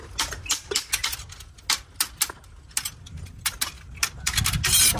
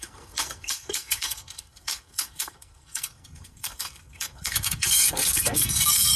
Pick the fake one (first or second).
second